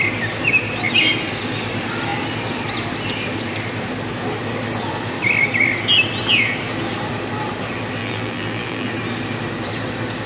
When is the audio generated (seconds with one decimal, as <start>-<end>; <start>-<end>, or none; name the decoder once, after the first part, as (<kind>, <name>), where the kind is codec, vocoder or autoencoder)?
8.0-8.9 (vocoder, BigVGAN v2)